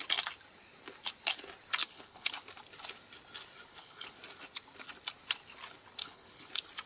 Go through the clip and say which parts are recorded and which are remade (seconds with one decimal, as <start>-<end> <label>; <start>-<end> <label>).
0.0-1.8 recorded; 1.8-2.3 remade; 2.3-3.7 recorded; 3.7-4.2 remade; 4.2-6.0 recorded; 6.0-6.5 remade; 6.5-6.9 recorded